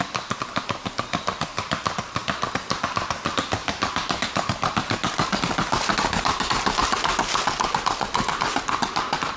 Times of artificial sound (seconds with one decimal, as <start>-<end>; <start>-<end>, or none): 1.5-2.5